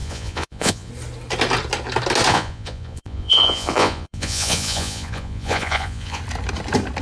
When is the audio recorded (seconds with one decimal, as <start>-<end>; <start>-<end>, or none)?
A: 0.9-2.3; 6.2-7.0